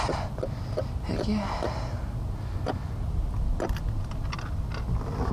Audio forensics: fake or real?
real